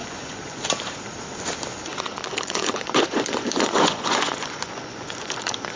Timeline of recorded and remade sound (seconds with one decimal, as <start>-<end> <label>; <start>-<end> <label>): 0.0-0.6 remade; 0.6-1.9 recorded; 1.9-5.8 remade